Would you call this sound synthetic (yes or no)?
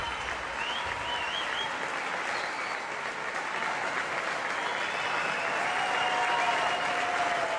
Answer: no